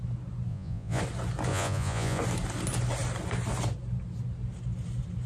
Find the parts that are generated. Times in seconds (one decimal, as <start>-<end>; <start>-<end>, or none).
0.5-1.0; 1.5-2.2